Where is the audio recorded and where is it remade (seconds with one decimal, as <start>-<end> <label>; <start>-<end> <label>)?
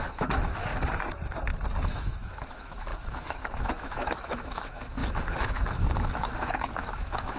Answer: 0.0-0.7 remade; 0.7-1.8 recorded; 1.8-7.4 remade